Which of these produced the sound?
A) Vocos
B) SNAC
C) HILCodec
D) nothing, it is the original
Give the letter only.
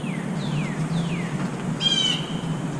D